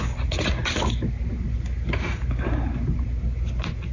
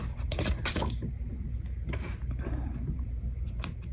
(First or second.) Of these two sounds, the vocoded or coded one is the second